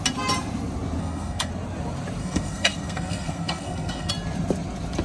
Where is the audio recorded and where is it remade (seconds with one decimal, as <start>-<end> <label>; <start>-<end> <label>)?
0.0-1.0 recorded; 1.0-1.5 remade; 1.5-2.2 recorded; 2.2-4.1 remade; 4.1-5.0 recorded